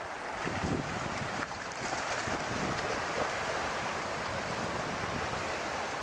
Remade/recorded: remade